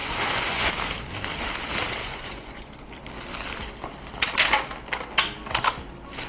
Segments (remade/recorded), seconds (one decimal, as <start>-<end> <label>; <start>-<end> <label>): 0.0-0.7 remade; 0.7-2.0 recorded; 2.0-2.9 remade; 2.9-6.3 recorded